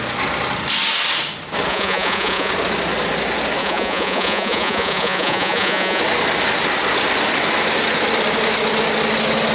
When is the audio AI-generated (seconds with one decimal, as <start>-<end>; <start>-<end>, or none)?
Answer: 1.7-2.5; 3.6-6.0